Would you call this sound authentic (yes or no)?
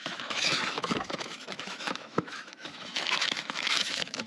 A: no